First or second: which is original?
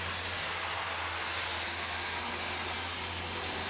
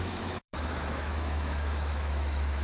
first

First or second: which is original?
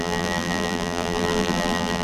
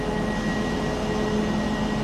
second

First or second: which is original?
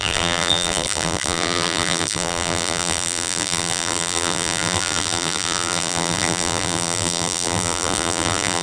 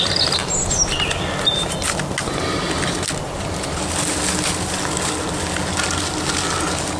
second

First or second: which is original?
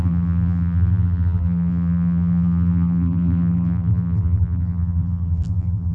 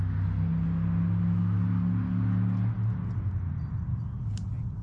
second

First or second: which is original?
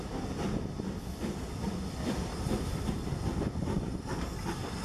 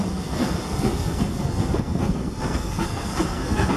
first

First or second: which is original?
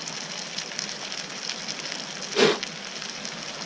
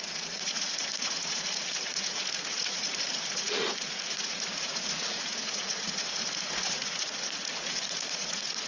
first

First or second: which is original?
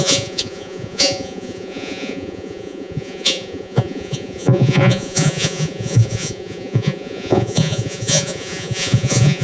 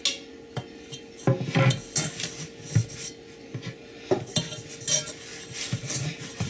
second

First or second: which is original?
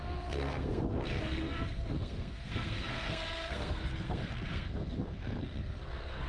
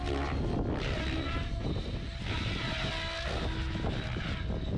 second